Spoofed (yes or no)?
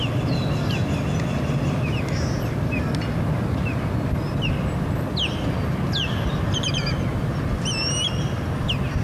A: no